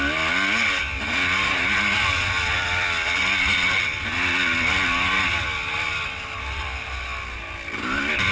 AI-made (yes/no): no